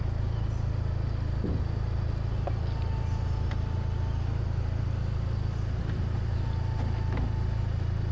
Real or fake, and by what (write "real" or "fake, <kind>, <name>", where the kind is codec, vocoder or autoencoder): real